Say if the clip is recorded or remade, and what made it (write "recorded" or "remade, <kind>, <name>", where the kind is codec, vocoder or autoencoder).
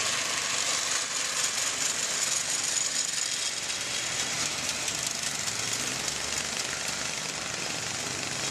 recorded